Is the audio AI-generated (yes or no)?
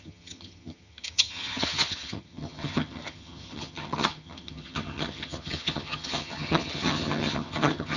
yes